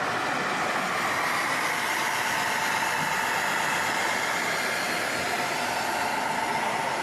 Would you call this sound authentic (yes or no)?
yes